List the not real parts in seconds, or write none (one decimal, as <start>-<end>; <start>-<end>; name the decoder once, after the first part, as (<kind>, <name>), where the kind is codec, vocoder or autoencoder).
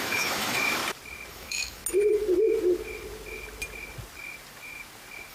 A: 0.0-0.8 (autoencoder, DAC-VAE); 1.3-1.8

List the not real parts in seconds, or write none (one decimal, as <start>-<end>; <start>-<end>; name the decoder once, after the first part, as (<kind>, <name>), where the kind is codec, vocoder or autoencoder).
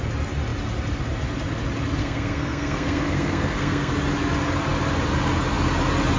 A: 2.0-3.9 (codec, SNAC)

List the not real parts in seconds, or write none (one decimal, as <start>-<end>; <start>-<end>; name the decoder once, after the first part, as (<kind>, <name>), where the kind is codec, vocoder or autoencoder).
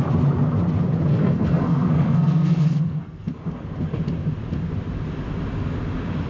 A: 1.1-3.5 (codec, SNAC)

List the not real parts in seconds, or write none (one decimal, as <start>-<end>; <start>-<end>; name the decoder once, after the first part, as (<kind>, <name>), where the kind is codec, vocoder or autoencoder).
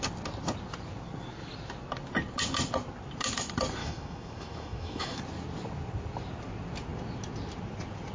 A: 3.8-5.2 (autoencoder, DAC-VAE)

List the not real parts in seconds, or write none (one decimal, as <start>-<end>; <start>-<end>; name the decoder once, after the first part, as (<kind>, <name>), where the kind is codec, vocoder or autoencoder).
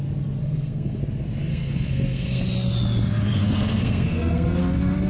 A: 0.4-1.0 (codec, SNAC); 1.5-2.4; 3.3-4.6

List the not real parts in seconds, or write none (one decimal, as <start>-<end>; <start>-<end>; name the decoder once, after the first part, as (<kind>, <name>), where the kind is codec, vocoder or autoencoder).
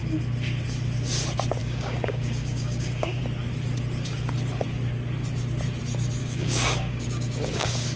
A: 1.6-3.2 (codec, DAC); 6.2-8.0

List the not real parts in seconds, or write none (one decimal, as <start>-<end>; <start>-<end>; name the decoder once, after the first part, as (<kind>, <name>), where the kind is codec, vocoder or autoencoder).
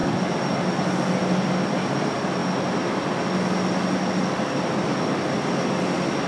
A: none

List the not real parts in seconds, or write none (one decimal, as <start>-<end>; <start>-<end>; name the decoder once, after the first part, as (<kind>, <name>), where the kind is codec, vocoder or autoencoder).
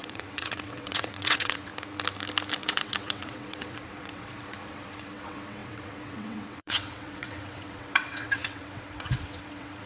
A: 0.0-1.7 (vocoder, WaveNeXt); 2.6-9.9